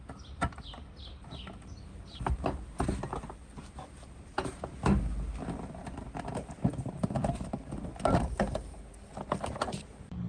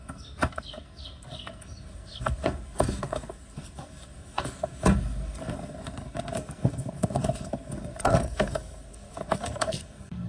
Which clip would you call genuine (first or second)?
first